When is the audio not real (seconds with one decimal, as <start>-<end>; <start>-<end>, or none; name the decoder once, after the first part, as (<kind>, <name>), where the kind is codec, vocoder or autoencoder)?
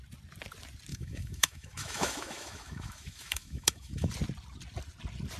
0.9-4.1 (autoencoder, DAC-VAE)